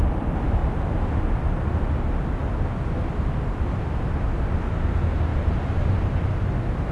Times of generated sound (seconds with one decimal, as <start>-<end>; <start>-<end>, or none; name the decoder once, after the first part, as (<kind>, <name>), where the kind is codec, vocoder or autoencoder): 5.3-6.2 (vocoder, BigVGAN v2)